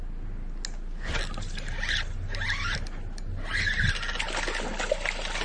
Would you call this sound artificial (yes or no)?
no